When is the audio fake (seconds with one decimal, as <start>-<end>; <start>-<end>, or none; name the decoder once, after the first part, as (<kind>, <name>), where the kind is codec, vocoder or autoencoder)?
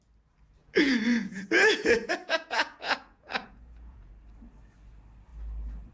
0.6-4.1 (vocoder, Vocos)